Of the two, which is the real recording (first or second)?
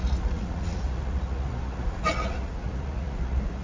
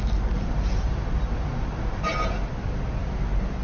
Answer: second